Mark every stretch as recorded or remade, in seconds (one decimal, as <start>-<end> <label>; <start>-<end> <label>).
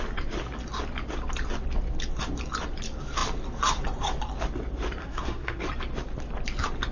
0.0-5.0 recorded; 5.0-5.6 remade; 5.6-6.9 recorded